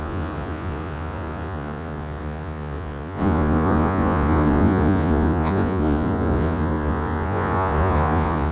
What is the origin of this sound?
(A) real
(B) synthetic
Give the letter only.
B